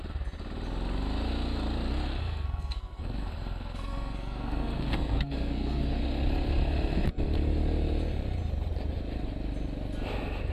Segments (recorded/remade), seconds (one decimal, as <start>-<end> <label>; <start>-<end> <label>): 0.0-2.2 recorded; 2.2-6.0 remade; 6.0-10.5 recorded